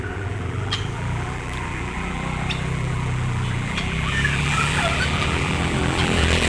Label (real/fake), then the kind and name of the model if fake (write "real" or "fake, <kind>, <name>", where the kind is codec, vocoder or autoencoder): fake, vocoder, BigVGAN v2